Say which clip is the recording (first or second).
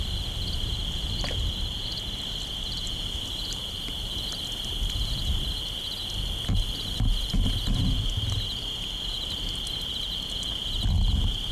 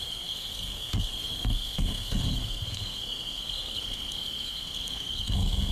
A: first